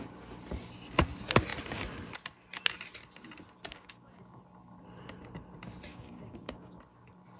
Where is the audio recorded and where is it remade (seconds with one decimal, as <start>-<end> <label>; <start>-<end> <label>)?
0.0-3.7 recorded; 3.7-4.4 remade; 4.4-5.9 recorded; 5.9-6.8 remade; 6.8-7.4 recorded